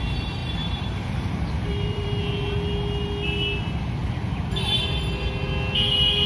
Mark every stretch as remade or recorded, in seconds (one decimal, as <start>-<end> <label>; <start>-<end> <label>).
0.0-0.4 recorded; 0.4-1.2 remade; 1.2-1.6 recorded; 1.6-2.1 remade; 2.1-6.3 recorded